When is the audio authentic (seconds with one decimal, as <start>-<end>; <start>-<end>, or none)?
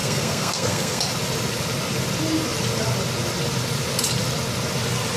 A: 1.0-5.2